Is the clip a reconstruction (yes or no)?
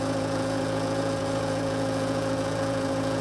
yes